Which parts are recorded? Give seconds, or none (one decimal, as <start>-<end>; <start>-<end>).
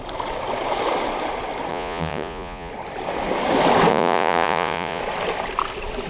0.0-1.7; 2.7-3.9; 5.0-6.1